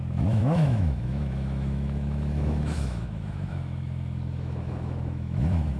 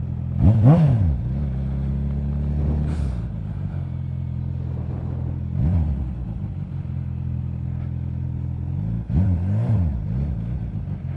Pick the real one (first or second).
second